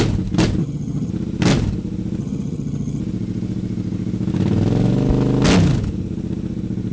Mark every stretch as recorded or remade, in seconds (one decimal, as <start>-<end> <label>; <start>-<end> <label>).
0.0-0.6 recorded; 0.6-1.1 remade; 1.1-2.2 recorded; 2.2-3.0 remade; 3.0-6.9 recorded

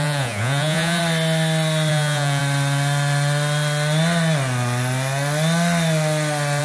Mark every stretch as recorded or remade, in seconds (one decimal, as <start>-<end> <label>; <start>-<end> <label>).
0.0-1.0 remade; 1.0-1.9 recorded; 1.9-2.4 remade; 2.4-6.6 recorded

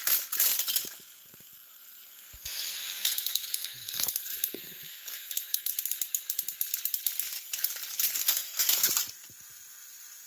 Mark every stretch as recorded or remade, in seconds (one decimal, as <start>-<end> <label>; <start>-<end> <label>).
0.0-1.2 recorded; 1.2-5.7 remade; 5.7-8.2 recorded; 8.2-8.9 remade; 8.9-10.3 recorded

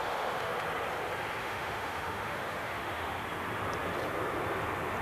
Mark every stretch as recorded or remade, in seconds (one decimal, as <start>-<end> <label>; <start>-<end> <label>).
0.0-0.6 remade; 0.6-1.4 recorded; 1.4-3.1 remade; 3.1-5.0 recorded

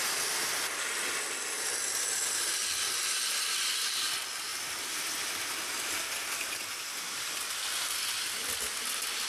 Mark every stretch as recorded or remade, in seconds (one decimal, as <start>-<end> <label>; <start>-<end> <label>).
0.0-9.3 recorded

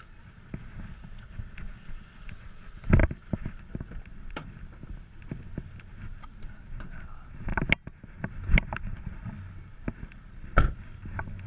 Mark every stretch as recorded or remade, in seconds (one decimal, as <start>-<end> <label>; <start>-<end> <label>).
0.0-3.0 recorded; 3.0-4.5 remade; 4.5-7.5 recorded; 7.5-10.7 remade; 10.7-11.5 recorded